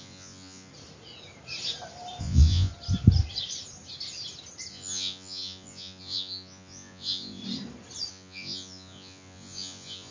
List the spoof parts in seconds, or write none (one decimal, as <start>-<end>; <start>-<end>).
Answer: 0.0-0.7; 2.2-2.7; 4.7-7.4; 8.1-10.1